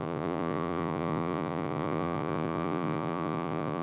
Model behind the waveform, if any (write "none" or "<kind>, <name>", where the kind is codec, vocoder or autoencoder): vocoder, Vocos